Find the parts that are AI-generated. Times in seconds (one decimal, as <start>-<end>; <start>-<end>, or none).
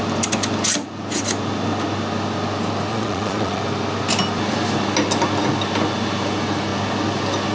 2.9-3.6